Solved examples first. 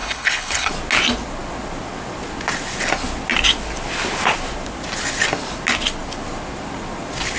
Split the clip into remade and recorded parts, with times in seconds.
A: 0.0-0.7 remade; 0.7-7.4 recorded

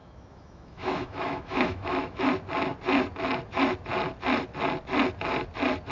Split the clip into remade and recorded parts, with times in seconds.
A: 0.0-2.2 remade; 2.2-5.9 recorded

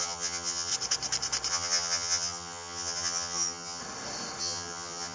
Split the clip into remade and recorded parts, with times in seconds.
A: 0.0-0.7 remade; 0.7-1.5 recorded; 1.5-3.8 remade; 3.8-4.4 recorded; 4.4-5.1 remade

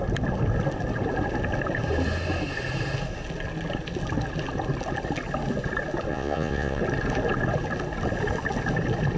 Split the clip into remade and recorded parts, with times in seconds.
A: 0.0-6.1 recorded; 6.1-6.8 remade; 6.8-9.2 recorded

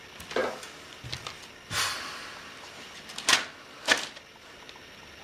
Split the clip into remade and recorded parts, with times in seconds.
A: 0.0-5.2 recorded

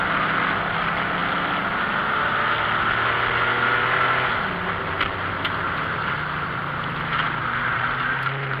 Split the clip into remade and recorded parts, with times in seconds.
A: 0.0-8.6 recorded